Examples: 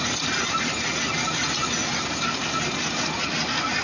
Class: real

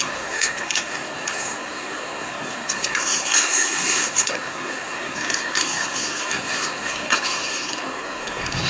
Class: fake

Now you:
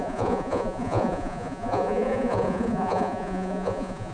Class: fake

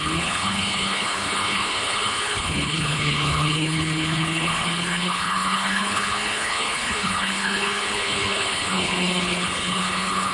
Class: fake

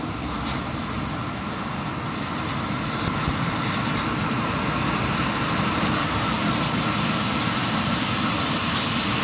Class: real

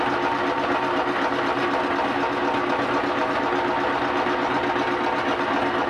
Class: real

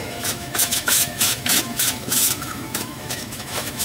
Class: fake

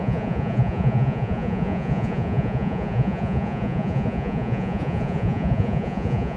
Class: fake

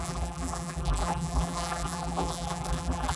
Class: fake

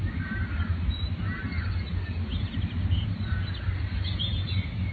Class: real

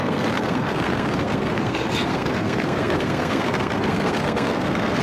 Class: fake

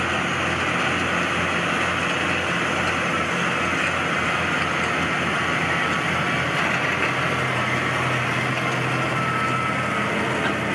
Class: real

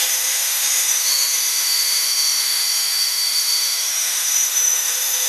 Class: fake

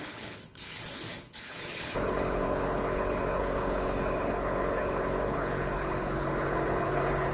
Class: fake